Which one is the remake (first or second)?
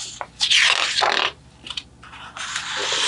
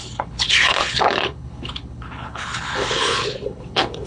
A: second